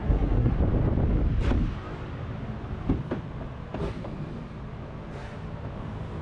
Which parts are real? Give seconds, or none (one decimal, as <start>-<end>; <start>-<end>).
0.5-6.2